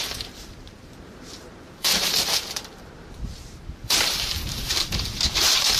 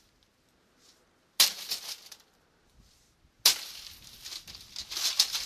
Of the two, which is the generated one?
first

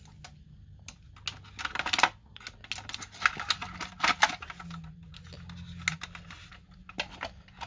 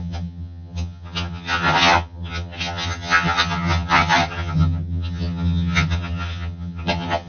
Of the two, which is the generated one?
second